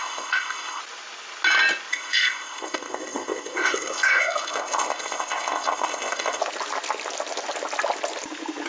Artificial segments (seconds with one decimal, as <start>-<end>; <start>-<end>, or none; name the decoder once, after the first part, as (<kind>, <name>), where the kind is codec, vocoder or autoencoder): 0.0-0.8 (codec, ZipCodec); 1.9-6.4